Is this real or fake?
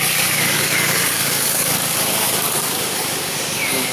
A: fake